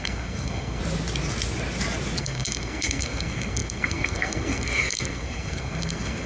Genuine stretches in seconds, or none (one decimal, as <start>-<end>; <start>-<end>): 0.8-2.2